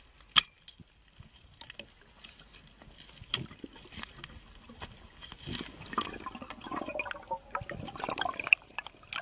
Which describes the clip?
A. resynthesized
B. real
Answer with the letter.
B